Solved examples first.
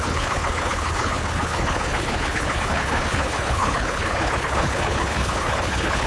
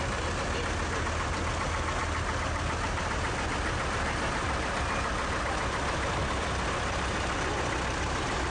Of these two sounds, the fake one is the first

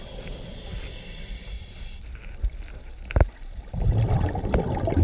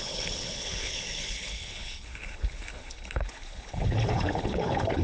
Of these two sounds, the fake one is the second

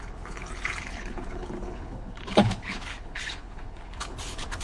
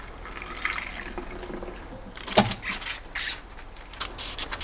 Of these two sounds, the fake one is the first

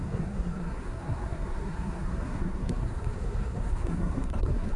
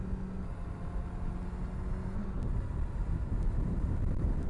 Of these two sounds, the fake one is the first